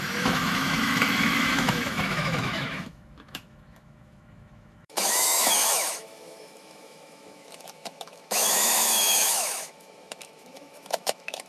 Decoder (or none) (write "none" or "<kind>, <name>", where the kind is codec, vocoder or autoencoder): autoencoder, DAC-VAE